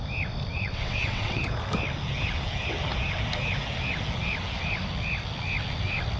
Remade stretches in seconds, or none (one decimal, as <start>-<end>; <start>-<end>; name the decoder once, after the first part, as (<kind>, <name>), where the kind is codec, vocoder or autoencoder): 0.5-1.4 (vocoder, WaveNeXt)